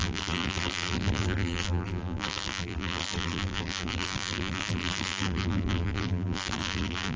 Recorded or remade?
remade